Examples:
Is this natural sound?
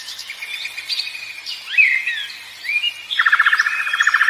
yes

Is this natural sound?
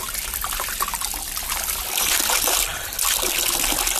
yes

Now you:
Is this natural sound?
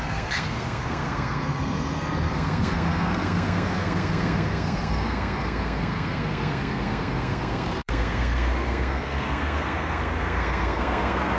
no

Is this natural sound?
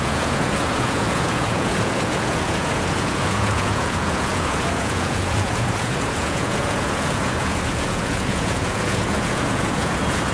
no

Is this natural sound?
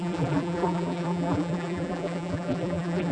no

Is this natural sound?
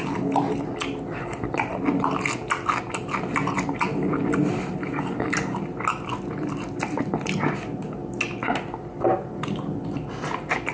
yes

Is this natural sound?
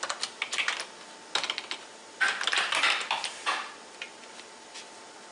yes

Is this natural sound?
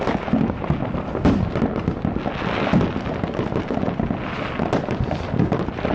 yes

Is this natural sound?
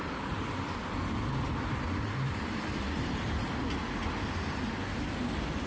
yes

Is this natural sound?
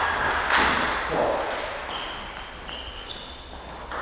yes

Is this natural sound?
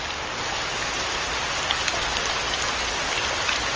yes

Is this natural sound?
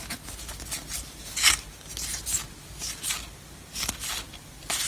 yes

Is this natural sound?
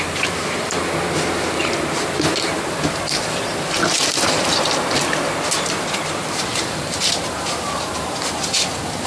no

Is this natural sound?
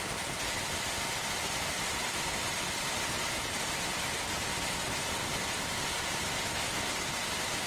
yes